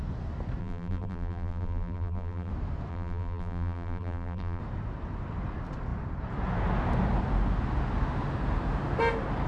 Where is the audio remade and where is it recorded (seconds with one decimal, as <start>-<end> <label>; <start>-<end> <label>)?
0.0-0.6 recorded; 0.6-2.5 remade; 2.5-2.9 recorded; 2.9-4.6 remade; 4.6-9.5 recorded